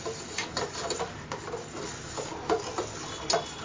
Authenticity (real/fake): real